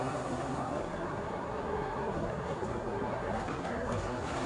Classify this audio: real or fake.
fake